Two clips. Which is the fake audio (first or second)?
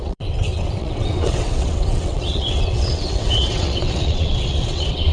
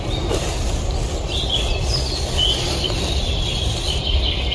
first